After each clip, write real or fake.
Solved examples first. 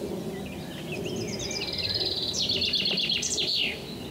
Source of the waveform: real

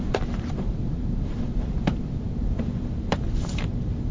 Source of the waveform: fake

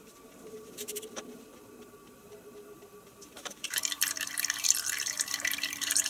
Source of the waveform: fake